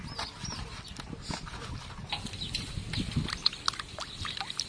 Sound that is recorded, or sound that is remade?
recorded